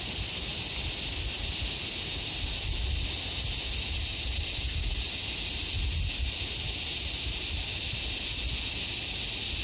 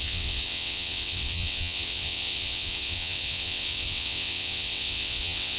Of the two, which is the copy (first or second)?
second